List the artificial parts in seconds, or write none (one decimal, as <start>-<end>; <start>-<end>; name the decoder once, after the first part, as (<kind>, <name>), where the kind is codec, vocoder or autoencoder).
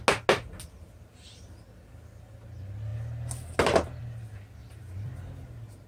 4.6-5.1 (vocoder, BigVGAN v2)